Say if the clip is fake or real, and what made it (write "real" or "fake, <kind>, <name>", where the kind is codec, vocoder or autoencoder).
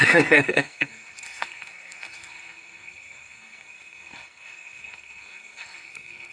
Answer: fake, codec, SNAC